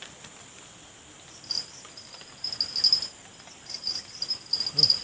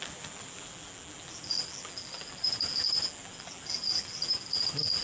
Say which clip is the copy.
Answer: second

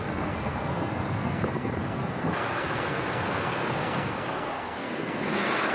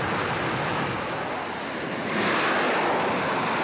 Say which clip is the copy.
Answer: first